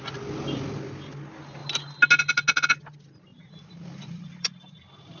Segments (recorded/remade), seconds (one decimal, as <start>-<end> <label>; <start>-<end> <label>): 0.0-3.3 recorded; 3.3-5.2 remade